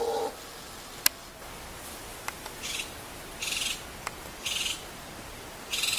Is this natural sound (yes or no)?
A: yes